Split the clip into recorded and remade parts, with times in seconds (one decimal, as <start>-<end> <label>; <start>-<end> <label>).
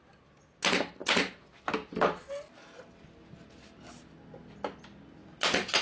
0.0-5.2 recorded; 5.2-5.8 remade